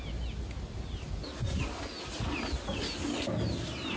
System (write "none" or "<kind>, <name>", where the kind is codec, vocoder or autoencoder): none